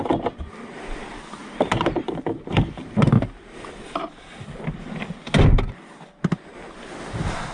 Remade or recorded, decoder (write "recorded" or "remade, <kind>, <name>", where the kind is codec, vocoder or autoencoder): recorded